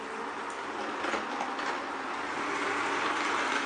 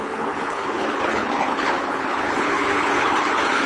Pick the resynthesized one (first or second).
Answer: second